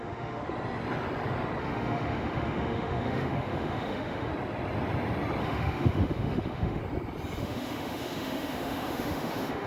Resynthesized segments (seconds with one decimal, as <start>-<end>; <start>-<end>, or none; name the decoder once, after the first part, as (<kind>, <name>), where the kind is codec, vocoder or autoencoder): 0.0-0.4 (autoencoder, DAC-VAE); 1.6-4.3; 5.4-6.8; 7.4-9.7